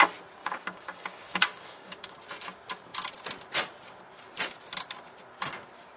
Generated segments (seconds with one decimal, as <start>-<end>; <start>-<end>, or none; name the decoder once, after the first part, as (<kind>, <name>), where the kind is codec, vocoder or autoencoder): 0.4-2.2 (codec, DAC)